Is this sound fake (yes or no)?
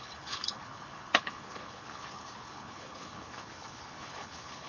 yes